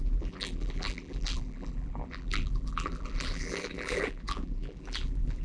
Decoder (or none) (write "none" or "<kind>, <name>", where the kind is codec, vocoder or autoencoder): vocoder, BigVGAN v2